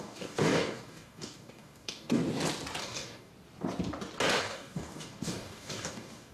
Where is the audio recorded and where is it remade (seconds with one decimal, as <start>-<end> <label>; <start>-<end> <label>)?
0.0-2.2 remade; 2.2-2.8 recorded; 2.8-3.3 remade; 3.3-4.4 recorded; 4.4-6.3 remade